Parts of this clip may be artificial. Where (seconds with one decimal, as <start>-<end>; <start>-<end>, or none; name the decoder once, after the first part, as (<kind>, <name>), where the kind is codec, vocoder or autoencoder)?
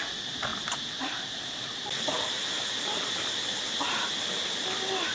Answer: 0.5-3.6 (vocoder, BigVGAN v2)